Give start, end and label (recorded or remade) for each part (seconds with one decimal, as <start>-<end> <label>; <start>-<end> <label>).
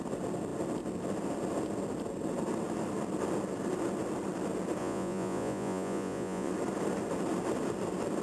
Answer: 0.0-4.8 recorded; 4.8-6.5 remade; 6.5-8.2 recorded